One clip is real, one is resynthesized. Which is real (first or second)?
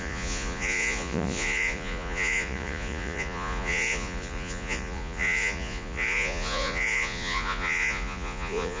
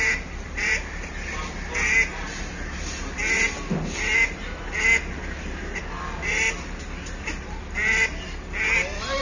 second